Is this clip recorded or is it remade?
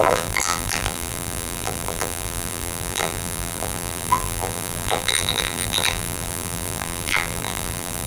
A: remade